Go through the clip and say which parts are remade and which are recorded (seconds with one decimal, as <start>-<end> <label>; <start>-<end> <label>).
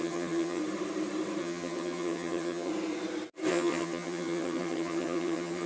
0.0-0.6 remade; 0.6-1.4 recorded; 1.4-2.7 remade; 2.7-3.5 recorded; 3.5-5.7 remade